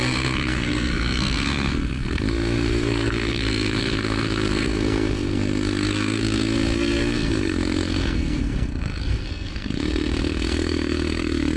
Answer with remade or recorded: remade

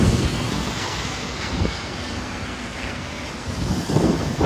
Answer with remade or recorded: remade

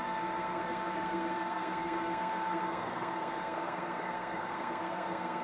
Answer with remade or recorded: remade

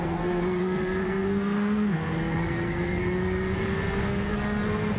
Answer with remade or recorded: remade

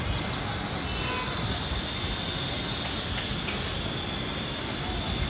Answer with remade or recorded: recorded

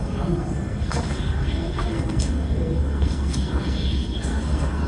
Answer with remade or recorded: remade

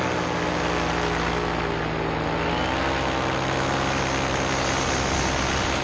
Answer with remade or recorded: recorded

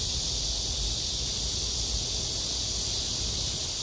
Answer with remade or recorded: recorded